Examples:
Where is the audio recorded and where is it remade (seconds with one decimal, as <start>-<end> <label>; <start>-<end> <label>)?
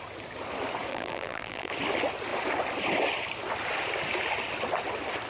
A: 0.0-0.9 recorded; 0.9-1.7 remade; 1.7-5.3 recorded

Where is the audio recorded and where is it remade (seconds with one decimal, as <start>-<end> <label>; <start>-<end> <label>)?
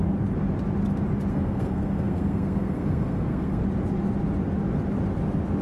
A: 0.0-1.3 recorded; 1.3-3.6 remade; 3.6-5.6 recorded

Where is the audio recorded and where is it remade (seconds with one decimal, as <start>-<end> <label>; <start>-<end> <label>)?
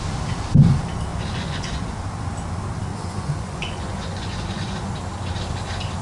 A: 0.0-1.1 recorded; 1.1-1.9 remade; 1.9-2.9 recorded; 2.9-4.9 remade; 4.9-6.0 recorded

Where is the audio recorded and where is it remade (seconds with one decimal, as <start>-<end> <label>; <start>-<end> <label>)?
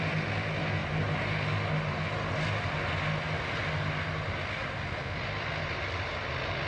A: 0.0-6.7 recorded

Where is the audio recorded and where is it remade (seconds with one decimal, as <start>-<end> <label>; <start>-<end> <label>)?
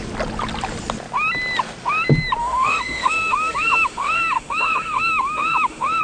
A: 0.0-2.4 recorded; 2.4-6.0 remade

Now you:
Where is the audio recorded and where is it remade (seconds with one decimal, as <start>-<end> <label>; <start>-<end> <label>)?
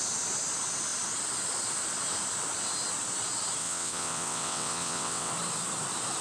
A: 0.0-3.6 recorded; 3.6-5.3 remade; 5.3-6.2 recorded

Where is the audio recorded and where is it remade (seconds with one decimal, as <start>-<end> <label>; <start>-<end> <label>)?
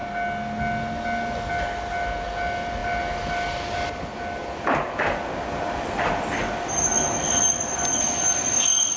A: 0.0-9.0 recorded